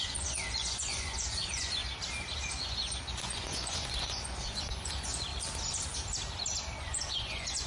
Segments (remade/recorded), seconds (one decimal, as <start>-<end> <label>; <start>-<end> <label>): 0.0-1.8 remade; 1.8-2.5 recorded; 2.5-5.3 remade; 5.3-6.8 recorded; 6.8-7.7 remade